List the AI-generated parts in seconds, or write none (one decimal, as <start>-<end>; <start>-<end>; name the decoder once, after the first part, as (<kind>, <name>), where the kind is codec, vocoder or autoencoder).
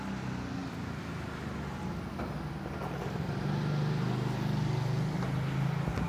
none